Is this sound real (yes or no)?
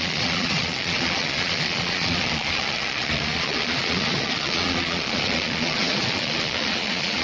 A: no